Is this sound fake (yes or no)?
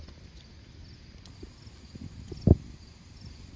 no